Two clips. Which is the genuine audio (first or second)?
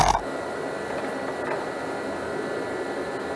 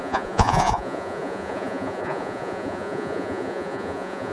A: first